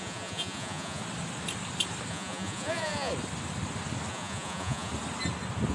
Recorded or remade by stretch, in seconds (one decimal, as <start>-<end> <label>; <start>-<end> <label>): 0.0-1.0 remade; 1.0-2.1 recorded; 2.1-3.1 remade; 3.1-4.1 recorded; 4.1-4.9 remade; 4.9-5.7 recorded